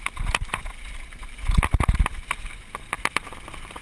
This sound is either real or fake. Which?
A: real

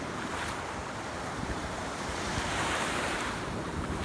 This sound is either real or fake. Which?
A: fake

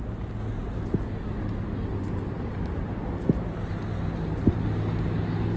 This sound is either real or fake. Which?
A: real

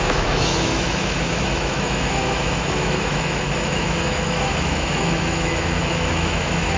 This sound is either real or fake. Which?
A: fake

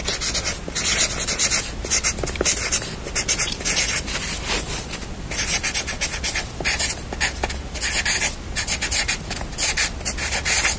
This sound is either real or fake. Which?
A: real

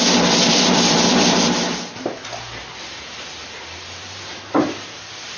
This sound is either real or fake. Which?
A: fake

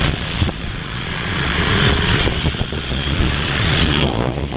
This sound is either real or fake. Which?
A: fake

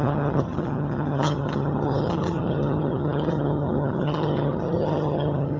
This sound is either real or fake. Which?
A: fake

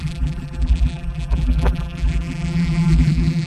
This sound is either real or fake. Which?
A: fake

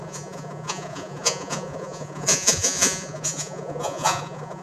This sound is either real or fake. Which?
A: fake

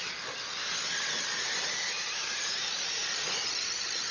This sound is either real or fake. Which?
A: fake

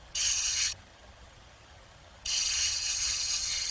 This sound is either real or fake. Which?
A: fake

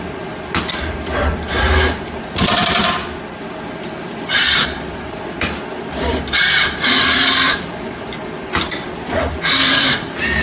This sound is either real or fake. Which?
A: fake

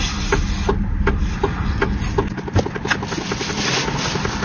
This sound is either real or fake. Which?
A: real